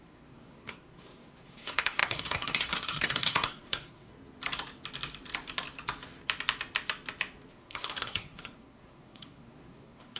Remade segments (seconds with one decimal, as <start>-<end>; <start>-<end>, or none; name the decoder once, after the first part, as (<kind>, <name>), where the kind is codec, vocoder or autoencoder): 0.0-4.1 (codec, SNAC); 7.5-10.2